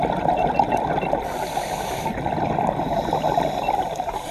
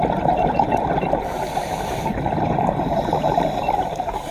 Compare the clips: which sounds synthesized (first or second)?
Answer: second